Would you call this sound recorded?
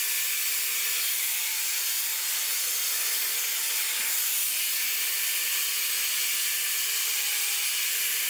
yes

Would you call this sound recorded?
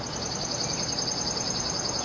yes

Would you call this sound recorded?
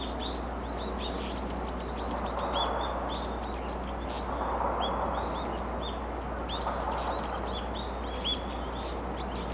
yes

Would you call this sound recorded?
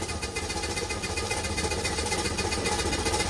yes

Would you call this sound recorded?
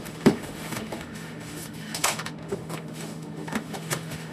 no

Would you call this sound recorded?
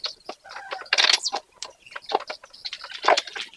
yes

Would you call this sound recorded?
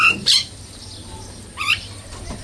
yes